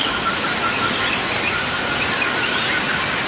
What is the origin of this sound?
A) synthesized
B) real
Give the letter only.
B